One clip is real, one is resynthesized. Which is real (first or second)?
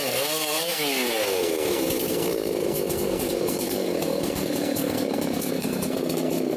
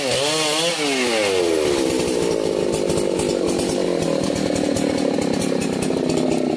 second